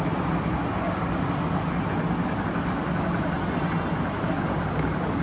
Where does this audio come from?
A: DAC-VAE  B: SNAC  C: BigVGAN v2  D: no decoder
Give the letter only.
D